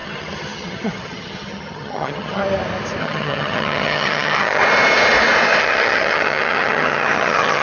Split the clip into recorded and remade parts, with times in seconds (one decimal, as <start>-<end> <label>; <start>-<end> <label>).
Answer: 0.0-2.4 remade; 2.4-3.0 recorded; 3.0-4.6 remade; 4.6-5.6 recorded; 5.6-7.6 remade